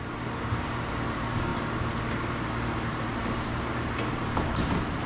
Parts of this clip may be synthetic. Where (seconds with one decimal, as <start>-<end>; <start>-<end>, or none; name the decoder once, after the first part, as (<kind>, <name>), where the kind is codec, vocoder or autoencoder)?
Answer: 0.0-1.5 (vocoder, BigVGAN v2); 2.7-5.1